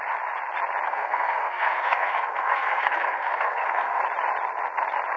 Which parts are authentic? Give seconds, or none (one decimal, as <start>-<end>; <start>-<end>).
0.0-0.9; 4.0-5.2